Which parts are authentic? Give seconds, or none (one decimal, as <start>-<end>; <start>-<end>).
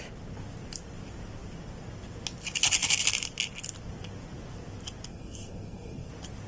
0.0-5.1; 6.1-6.5